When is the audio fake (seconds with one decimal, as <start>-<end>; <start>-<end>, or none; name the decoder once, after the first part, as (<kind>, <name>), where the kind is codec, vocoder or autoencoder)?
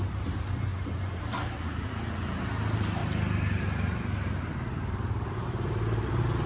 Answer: 0.0-3.0 (vocoder, BigVGAN v2); 3.5-6.5